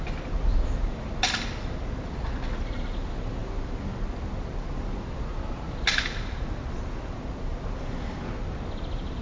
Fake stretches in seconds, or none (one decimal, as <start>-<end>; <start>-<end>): none